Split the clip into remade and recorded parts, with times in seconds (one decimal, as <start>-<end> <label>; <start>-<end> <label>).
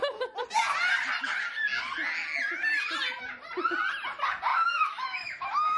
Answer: 0.0-4.5 recorded; 4.5-5.8 remade